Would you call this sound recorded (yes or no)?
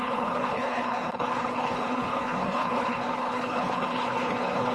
no